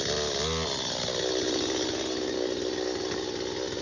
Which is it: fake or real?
real